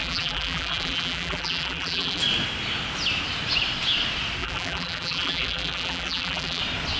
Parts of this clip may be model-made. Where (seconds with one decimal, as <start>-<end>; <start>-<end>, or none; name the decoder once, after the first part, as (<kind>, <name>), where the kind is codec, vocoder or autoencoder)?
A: 0.0-2.2 (vocoder, BigVGAN v2); 4.4-6.6